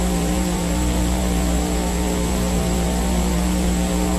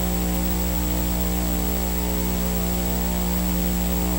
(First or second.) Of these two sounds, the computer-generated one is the first